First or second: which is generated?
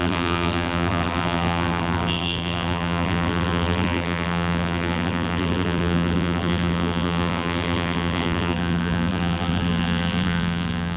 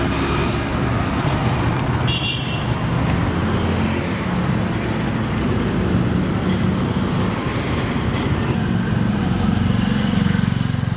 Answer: first